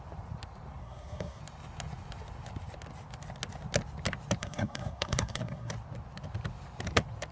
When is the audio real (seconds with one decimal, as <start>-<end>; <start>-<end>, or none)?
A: 0.0-0.8; 1.4-4.4; 5.7-7.3